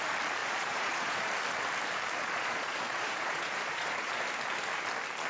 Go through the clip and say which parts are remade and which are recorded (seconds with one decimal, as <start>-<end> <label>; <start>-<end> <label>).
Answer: 0.0-0.4 recorded; 0.4-1.3 remade; 1.3-2.2 recorded; 2.2-4.1 remade; 4.1-5.3 recorded